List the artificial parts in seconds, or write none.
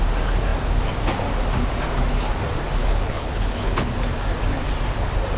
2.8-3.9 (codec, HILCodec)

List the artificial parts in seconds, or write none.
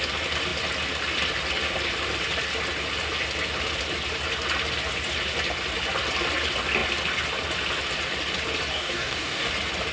8.7-9.5 (codec, DAC)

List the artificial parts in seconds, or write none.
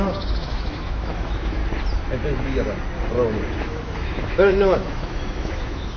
0.0-1.6 (autoencoder, DAC-VAE); 3.6-6.0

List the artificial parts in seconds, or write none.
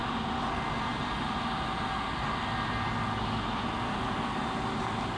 none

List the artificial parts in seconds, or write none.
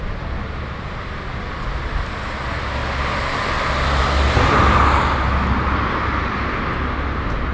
none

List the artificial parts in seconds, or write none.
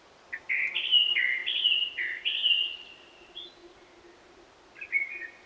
none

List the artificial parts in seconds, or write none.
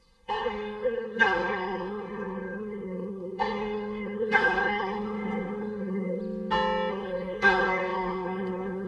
0.0-6.2 (codec, SNAC); 6.9-8.9